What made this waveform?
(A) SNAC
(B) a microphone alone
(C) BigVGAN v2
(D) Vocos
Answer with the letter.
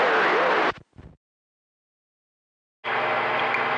B